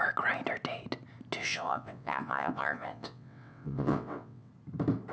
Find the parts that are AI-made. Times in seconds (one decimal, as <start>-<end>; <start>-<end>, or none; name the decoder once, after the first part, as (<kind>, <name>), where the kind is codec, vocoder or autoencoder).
1.4-4.5 (vocoder, WaveNeXt)